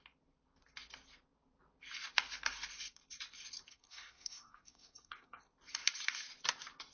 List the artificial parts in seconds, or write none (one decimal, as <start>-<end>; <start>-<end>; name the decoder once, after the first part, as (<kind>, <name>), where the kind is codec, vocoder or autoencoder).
3.7-5.4 (codec, SNAC)